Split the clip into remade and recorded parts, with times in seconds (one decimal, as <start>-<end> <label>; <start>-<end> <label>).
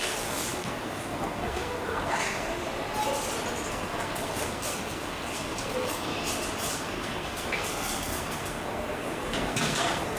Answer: 0.0-2.5 remade; 2.5-3.7 recorded; 3.7-6.1 remade; 6.1-6.7 recorded; 6.7-10.2 remade